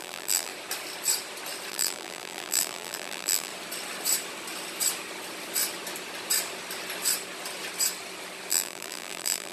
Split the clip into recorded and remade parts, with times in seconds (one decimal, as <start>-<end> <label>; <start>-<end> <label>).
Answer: 0.0-0.5 remade; 0.5-1.7 recorded; 1.7-3.5 remade; 3.5-8.5 recorded; 8.5-9.5 remade